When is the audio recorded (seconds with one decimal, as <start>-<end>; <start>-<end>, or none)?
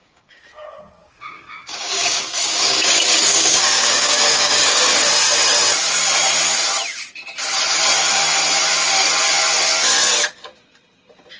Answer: 5.1-11.4